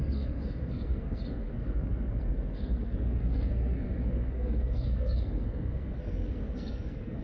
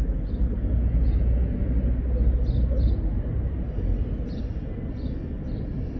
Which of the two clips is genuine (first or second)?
second